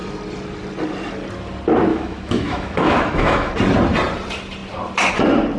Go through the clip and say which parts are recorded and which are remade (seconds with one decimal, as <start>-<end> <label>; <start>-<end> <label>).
0.0-1.9 recorded; 1.9-3.5 remade; 3.5-5.6 recorded